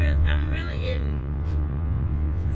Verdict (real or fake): fake